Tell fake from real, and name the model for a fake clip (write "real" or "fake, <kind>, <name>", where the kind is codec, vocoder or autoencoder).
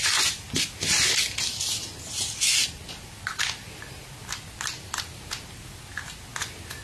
real